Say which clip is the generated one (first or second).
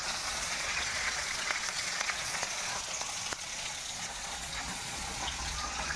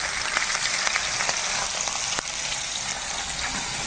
first